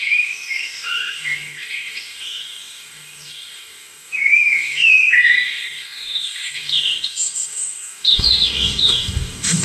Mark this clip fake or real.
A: fake